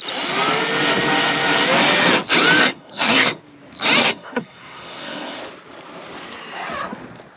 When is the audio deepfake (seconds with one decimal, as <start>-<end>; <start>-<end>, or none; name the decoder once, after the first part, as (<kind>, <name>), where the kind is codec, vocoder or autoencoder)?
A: 2.6-3.4 (codec, SNAC); 4.0-5.4